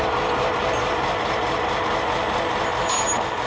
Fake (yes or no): no